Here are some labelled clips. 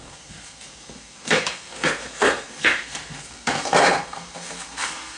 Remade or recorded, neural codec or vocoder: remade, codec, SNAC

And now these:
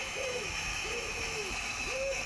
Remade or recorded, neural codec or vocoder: remade, autoencoder, DAC-VAE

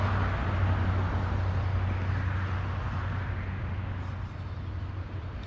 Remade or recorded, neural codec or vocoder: recorded